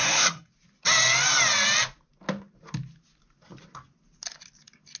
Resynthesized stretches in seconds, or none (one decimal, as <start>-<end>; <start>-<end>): 0.0-0.5